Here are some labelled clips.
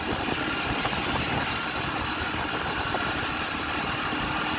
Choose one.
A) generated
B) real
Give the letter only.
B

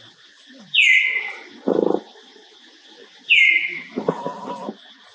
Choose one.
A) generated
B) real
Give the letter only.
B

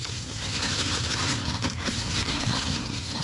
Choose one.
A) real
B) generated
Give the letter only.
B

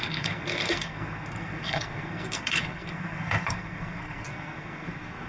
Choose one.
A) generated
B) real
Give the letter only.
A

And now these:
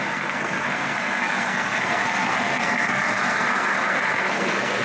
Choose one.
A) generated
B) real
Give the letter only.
A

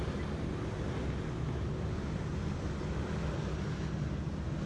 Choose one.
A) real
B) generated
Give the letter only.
A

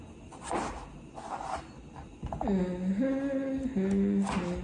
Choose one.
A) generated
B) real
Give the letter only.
B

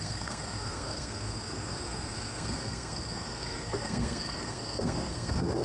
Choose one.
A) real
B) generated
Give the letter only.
B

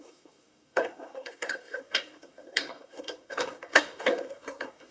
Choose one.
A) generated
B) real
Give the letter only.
A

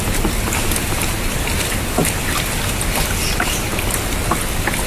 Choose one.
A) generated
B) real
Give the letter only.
B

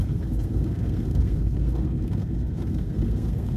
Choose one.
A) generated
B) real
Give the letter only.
A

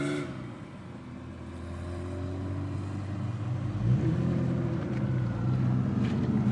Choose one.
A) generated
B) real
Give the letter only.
B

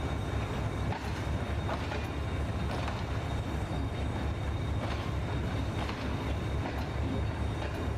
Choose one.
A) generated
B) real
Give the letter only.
B